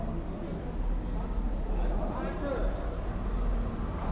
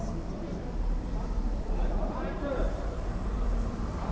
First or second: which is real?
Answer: first